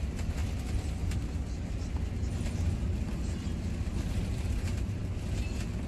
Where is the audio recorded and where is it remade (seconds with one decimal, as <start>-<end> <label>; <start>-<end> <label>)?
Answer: 0.0-0.4 remade; 0.4-3.9 recorded; 3.9-5.0 remade; 5.0-5.9 recorded